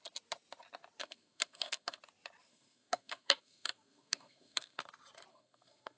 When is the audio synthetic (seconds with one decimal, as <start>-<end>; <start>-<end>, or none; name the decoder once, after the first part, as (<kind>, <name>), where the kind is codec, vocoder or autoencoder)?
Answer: 1.0-2.0 (codec, SNAC); 2.5-4.8; 5.3-6.0